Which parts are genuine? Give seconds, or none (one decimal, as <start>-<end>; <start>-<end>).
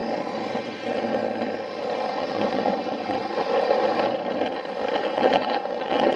0.0-0.5; 1.2-2.1; 3.2-5.0